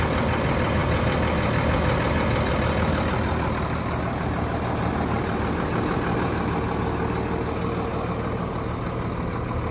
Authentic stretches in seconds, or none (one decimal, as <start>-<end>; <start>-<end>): 0.0-9.7